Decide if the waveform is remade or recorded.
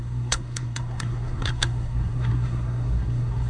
remade